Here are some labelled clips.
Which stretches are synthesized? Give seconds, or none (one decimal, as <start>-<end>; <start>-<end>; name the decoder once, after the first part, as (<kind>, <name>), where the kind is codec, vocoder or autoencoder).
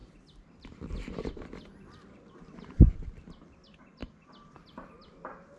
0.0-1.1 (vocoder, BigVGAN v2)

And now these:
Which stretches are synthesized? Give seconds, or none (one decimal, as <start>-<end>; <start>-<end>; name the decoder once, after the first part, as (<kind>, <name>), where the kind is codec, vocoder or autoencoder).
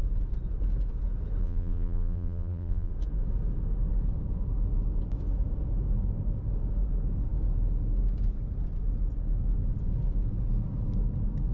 1.4-2.9 (vocoder, BigVGAN v2)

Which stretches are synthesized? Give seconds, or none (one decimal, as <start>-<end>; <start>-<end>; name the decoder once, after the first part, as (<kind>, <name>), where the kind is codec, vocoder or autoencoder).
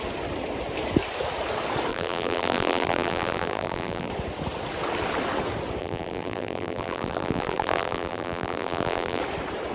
1.9-4.1 (vocoder, BigVGAN v2); 5.8-9.2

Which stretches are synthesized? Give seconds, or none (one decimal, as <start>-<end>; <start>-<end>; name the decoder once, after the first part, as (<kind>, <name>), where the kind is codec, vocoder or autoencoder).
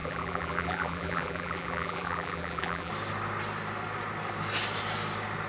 0.0-2.9 (vocoder, BigVGAN v2)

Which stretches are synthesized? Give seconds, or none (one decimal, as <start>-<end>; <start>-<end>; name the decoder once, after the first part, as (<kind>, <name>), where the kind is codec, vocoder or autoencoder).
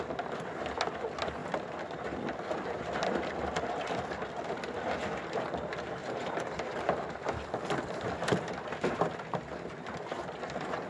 1.4-3.6 (vocoder, BigVGAN v2); 6.0-8.9